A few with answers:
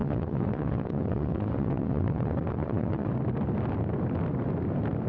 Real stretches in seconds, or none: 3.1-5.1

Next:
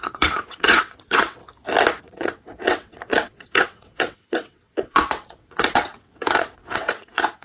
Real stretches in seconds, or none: 1.4-2.0

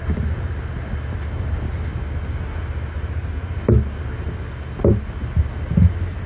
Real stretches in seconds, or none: 0.0-6.3